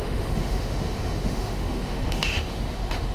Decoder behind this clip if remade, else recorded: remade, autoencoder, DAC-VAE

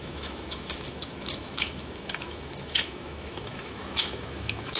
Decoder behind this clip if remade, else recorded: remade, autoencoder, DAC-VAE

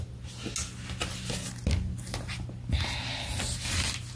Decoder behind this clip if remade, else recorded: recorded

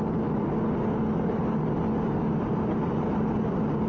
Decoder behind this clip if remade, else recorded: recorded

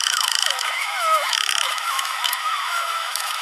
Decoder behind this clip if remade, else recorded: remade, autoencoder, DAC-VAE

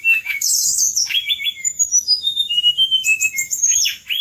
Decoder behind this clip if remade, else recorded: remade, autoencoder, DAC-VAE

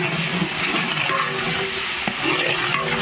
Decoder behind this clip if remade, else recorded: recorded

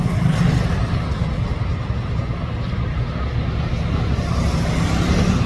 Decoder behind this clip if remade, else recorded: recorded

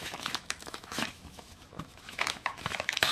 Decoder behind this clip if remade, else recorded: remade, autoencoder, DAC-VAE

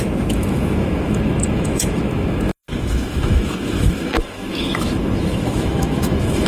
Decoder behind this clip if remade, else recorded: remade, autoencoder, DAC-VAE